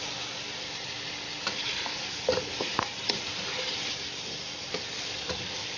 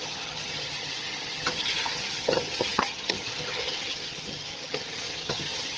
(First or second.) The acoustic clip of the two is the first